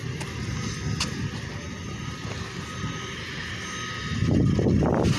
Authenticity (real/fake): real